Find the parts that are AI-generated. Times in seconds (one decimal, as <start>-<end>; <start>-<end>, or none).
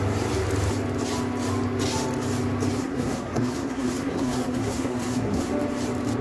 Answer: 2.8-5.5